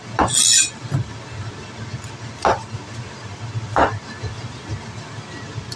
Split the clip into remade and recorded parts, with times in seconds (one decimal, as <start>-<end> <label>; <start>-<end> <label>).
0.0-5.8 recorded